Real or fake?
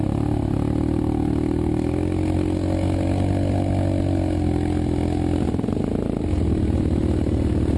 real